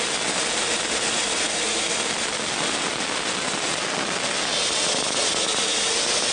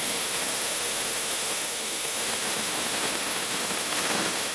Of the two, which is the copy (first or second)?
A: second